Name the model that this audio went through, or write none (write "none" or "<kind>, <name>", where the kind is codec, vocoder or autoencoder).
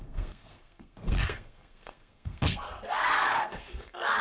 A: codec, SNAC